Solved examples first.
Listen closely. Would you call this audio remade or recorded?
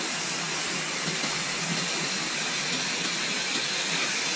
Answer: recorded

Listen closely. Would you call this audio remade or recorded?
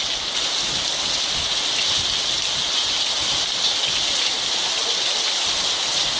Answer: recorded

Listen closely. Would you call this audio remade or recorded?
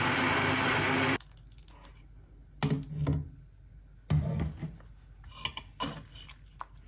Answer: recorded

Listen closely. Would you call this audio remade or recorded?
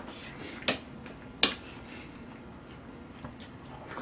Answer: recorded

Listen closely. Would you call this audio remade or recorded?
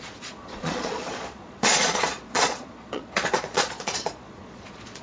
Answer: remade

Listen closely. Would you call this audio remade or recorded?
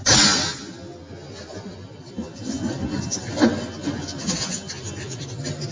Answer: recorded